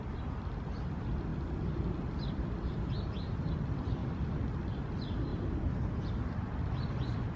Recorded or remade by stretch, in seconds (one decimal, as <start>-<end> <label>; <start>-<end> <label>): 0.0-1.3 remade; 1.3-2.3 recorded; 2.3-4.0 remade; 4.0-4.8 recorded; 4.8-5.3 remade; 5.3-6.0 recorded; 6.0-7.4 remade